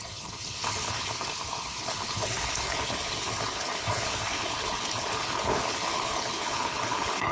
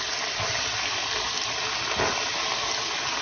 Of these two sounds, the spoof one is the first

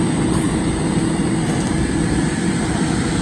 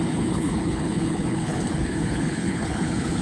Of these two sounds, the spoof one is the second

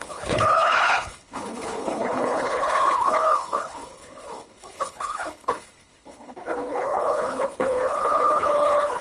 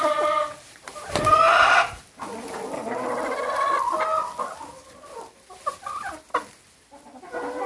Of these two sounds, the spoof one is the first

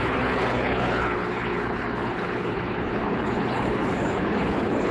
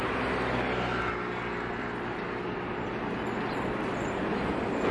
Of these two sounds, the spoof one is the first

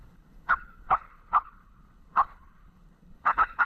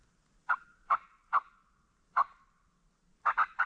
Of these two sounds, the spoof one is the first